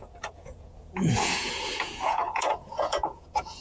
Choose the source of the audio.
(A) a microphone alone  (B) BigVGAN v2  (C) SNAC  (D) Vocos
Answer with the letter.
D